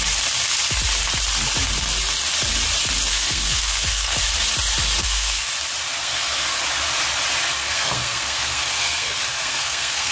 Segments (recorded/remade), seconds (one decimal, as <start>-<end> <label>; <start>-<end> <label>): 0.0-3.1 recorded; 3.1-4.2 remade; 4.2-5.0 recorded; 5.0-5.5 remade; 5.5-6.0 recorded; 6.0-6.6 remade; 6.6-7.6 recorded; 7.6-10.1 remade